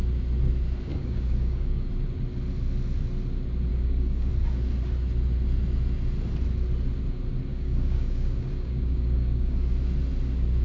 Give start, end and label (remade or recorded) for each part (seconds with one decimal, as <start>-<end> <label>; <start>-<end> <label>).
0.0-0.9 recorded; 0.9-1.9 remade; 1.9-3.7 recorded; 3.7-4.3 remade; 4.3-7.5 recorded; 7.5-9.7 remade; 9.7-10.6 recorded